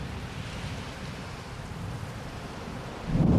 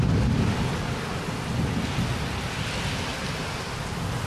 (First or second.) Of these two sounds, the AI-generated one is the first